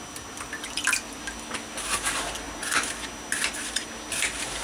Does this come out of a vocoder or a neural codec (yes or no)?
no